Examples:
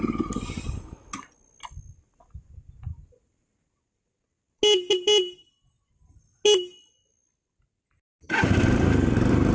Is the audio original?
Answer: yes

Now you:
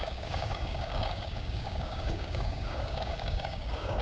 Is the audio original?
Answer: no